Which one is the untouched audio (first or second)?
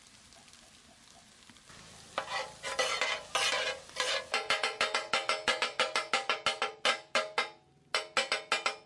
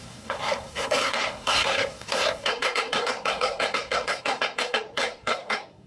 first